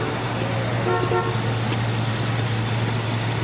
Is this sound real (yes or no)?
yes